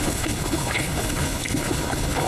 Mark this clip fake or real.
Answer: fake